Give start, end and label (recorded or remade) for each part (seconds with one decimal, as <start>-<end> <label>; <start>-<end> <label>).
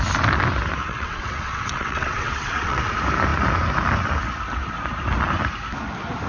0.0-0.8 recorded; 0.8-2.9 remade; 2.9-6.3 recorded